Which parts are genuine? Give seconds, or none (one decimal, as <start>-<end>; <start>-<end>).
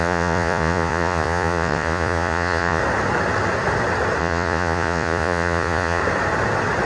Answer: 2.8-4.2; 6.0-6.9